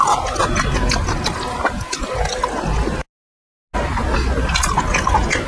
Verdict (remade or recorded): recorded